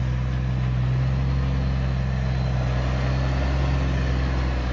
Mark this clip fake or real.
real